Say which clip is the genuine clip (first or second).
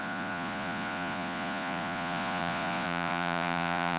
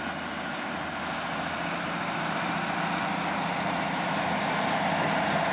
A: second